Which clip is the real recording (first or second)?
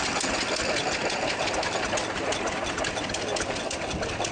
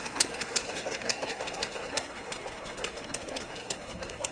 first